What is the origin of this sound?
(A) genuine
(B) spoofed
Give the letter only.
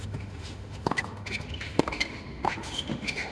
B